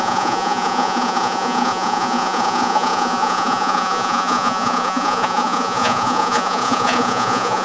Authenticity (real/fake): fake